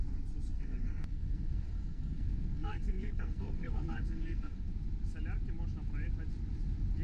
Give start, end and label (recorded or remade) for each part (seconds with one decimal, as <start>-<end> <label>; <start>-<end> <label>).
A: 0.0-0.5 recorded; 0.5-4.7 remade; 4.7-7.0 recorded